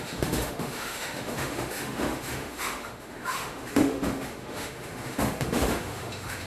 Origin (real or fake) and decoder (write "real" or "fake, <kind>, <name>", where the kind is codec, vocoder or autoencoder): fake, autoencoder, DAC-VAE